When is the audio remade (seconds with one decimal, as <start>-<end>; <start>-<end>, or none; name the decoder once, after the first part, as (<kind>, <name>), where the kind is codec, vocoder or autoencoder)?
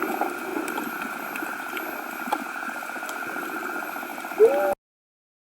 none